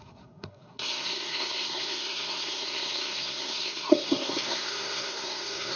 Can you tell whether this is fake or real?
fake